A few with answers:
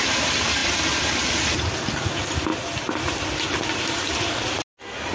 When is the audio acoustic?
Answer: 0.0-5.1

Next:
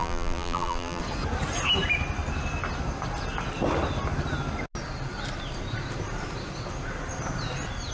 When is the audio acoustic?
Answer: 1.0-7.9

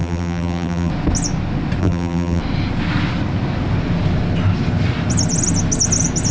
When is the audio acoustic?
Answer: 0.9-1.8; 2.4-6.3

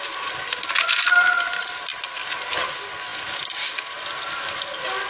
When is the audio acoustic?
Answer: 0.0-3.1; 4.3-5.1

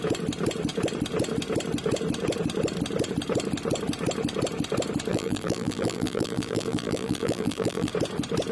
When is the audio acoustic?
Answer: 0.0-5.1; 7.9-8.5

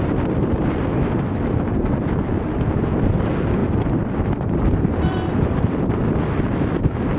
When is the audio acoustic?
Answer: 0.0-3.6; 6.0-7.2

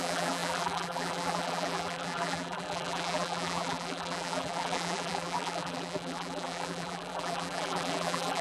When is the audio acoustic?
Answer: none